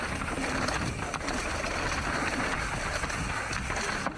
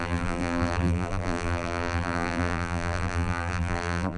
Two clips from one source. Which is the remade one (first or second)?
second